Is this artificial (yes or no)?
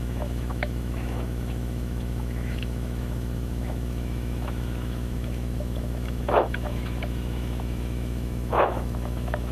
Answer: yes